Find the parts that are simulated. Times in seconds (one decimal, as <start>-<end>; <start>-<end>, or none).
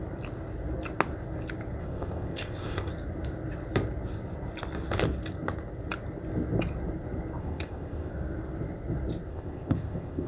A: 1.8-2.9; 7.4-8.1; 9.3-10.3